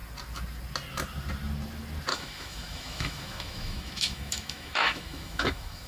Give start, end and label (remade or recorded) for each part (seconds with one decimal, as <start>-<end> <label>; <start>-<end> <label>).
0.0-2.1 recorded; 2.1-5.9 remade